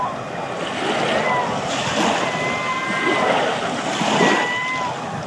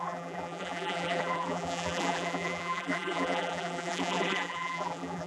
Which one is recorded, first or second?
first